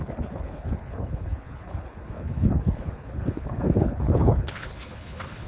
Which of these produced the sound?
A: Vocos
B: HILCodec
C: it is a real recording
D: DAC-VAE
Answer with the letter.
B